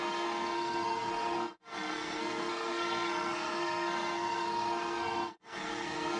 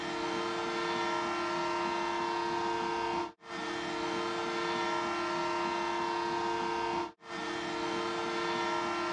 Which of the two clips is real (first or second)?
second